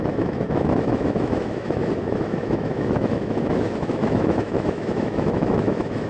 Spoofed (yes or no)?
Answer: yes